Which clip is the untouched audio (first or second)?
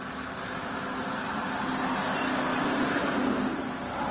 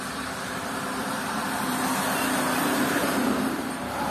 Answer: first